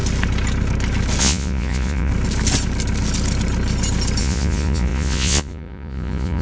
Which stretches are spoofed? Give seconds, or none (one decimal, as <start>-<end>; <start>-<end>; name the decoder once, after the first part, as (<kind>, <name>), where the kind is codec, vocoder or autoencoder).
1.2-2.1 (vocoder, Vocos); 4.2-6.4